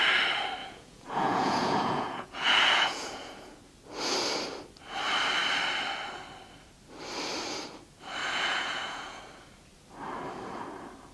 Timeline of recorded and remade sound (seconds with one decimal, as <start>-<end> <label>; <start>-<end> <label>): 0.0-0.6 recorded; 0.6-3.6 remade; 3.6-8.2 recorded; 8.2-9.2 remade; 9.2-11.1 recorded